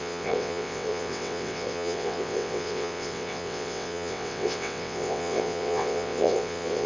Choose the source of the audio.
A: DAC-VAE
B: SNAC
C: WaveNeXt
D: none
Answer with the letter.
C